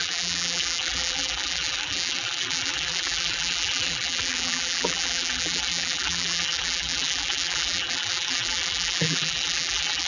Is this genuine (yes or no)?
no